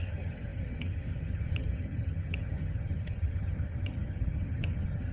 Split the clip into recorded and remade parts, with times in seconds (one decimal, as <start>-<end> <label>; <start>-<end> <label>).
0.0-5.1 remade